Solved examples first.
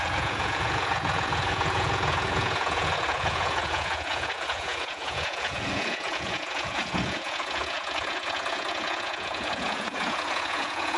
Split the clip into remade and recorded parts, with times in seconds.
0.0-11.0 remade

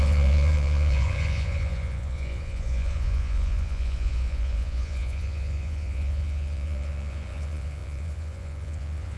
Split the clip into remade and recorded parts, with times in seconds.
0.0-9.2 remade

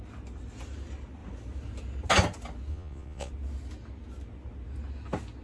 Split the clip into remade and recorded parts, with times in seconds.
0.0-2.7 recorded; 2.7-3.3 remade; 3.3-5.4 recorded

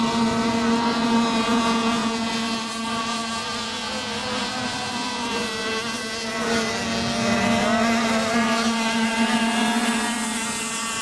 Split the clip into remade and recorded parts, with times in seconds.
0.0-1.5 recorded; 1.5-2.3 remade; 2.3-11.0 recorded

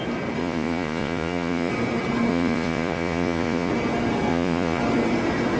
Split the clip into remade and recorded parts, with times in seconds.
0.0-0.4 recorded; 0.4-1.7 remade; 1.7-2.3 recorded; 2.3-3.7 remade; 3.7-4.3 recorded; 4.3-4.8 remade; 4.8-5.6 recorded